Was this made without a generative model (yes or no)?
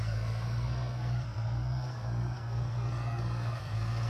no